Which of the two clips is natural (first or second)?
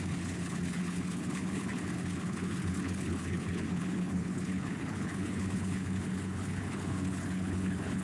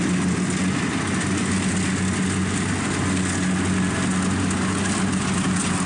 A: second